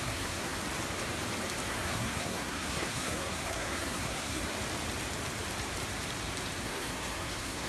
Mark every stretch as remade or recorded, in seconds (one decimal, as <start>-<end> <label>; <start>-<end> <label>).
0.0-0.6 remade; 0.6-1.7 recorded; 1.7-4.4 remade; 4.4-6.6 recorded; 6.6-7.7 remade